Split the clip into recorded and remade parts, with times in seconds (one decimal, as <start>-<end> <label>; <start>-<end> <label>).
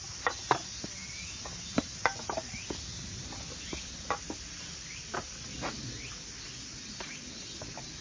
0.0-8.0 recorded